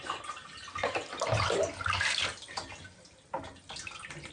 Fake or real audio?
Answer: real